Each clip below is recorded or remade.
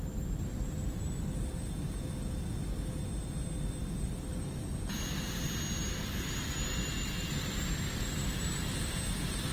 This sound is recorded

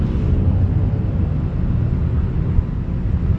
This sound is recorded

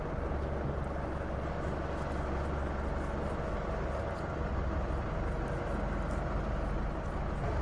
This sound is recorded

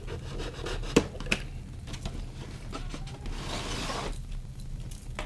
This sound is recorded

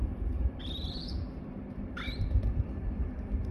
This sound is remade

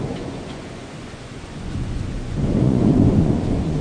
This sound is remade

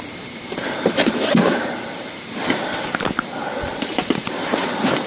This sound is remade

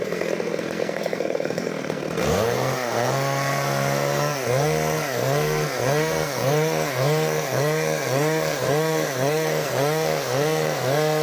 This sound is remade